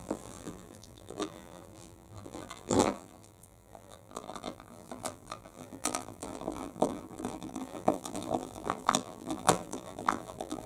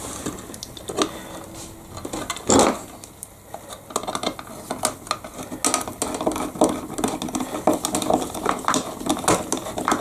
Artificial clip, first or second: first